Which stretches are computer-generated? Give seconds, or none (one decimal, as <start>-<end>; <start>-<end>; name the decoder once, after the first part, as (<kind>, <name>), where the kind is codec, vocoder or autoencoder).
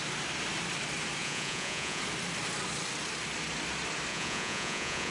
1.2-2.0 (vocoder, Vocos); 4.1-5.1